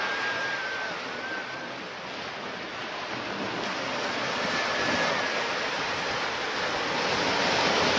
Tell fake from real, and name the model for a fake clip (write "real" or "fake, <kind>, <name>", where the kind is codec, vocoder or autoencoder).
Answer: real